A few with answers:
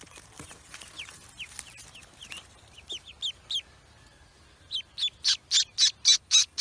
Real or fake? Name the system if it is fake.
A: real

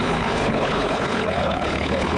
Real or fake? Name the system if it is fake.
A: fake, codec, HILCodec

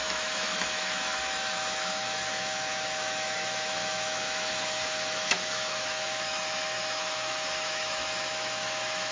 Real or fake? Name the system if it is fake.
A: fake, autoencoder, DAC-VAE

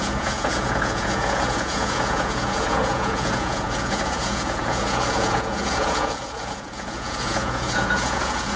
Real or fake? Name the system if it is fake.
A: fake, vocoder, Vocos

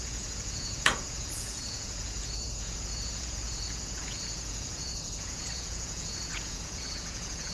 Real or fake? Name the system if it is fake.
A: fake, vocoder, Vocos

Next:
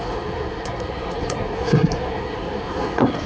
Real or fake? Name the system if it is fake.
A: fake, codec, SNAC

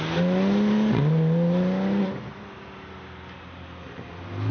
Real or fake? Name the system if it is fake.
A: real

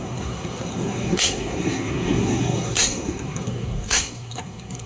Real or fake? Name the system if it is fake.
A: fake, codec, SNAC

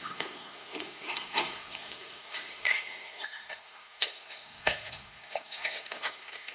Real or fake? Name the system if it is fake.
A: fake, codec, SNAC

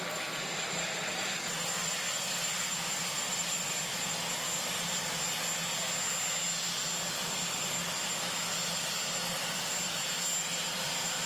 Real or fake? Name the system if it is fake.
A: real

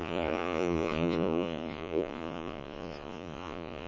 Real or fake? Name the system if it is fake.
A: fake, vocoder, Vocos